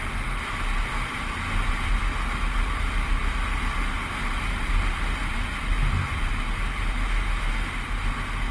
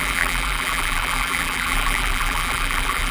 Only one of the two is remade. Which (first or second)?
second